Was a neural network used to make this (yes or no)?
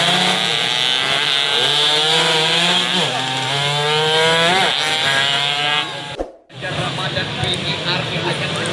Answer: no